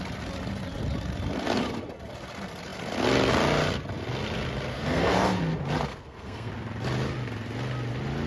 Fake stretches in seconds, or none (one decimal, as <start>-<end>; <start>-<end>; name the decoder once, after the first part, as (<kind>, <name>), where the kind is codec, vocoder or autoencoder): 4.7-5.4 (codec, SNAC); 5.9-6.5